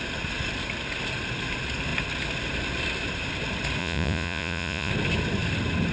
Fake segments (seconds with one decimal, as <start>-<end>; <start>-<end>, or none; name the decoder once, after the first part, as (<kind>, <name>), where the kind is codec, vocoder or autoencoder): 3.8-4.9 (vocoder, Vocos)

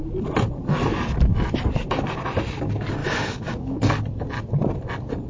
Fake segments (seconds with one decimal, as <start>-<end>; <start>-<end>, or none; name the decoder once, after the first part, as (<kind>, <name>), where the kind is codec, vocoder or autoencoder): 3.0-3.8 (autoencoder, DAC-VAE)

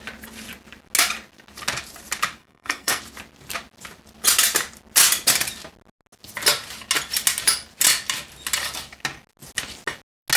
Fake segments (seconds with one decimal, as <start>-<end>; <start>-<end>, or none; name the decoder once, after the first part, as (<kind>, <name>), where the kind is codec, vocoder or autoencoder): 2.4-3.0 (codec, SNAC)

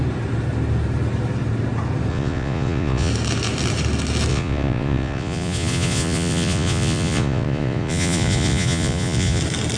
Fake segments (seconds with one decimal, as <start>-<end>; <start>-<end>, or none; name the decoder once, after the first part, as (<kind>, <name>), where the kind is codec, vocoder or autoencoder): 2.1-3.1 (vocoder, Vocos); 4.3-9.4